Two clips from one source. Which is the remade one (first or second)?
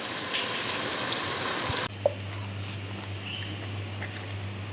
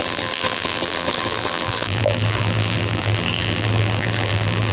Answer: second